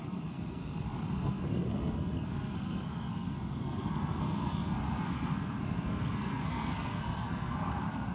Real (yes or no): no